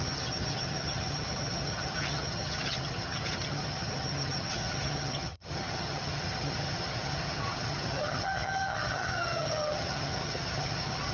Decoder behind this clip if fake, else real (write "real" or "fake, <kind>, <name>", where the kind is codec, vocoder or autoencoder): fake, vocoder, HiFi-GAN